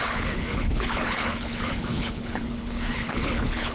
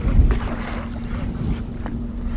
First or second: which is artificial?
first